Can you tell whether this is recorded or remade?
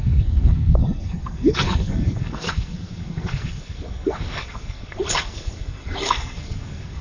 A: remade